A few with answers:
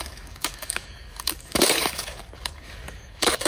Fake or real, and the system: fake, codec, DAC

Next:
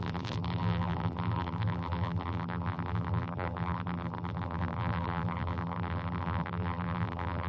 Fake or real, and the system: fake, vocoder, BigVGAN v2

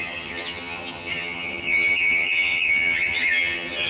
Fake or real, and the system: fake, vocoder, HiFi-GAN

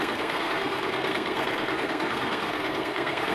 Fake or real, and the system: fake, codec, SNAC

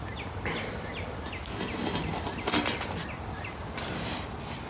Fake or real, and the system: real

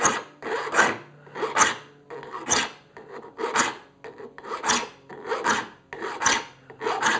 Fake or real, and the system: real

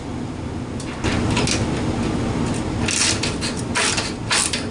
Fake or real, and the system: real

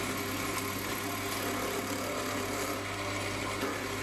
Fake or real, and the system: real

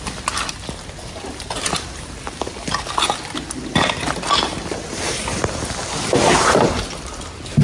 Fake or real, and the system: real